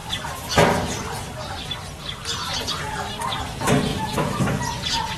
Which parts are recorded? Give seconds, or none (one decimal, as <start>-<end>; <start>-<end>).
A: 0.0-3.9; 4.6-5.2